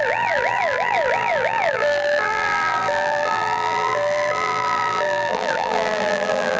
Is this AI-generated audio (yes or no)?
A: yes